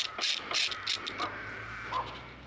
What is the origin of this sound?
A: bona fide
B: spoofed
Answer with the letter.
A